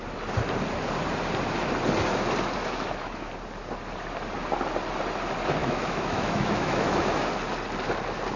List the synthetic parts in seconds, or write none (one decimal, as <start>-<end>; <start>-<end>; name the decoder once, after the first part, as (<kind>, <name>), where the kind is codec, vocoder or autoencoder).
2.6-3.3 (autoencoder, DAC-VAE); 5.6-7.3